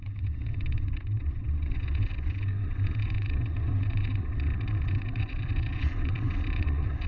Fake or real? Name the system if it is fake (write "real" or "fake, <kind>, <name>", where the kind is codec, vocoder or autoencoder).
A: fake, vocoder, WaveNeXt